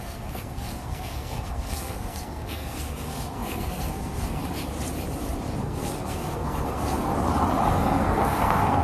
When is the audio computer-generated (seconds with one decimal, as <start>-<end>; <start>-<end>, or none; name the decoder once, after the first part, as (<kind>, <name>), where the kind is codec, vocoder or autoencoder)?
0.0-4.4 (codec, SNAC); 5.6-7.1; 7.7-8.8